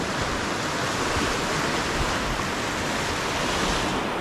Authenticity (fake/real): real